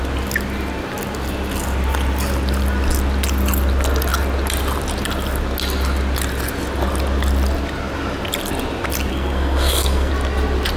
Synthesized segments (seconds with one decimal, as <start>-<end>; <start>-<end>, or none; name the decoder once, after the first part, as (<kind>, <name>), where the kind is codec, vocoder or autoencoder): 9.1-10.1 (codec, SNAC)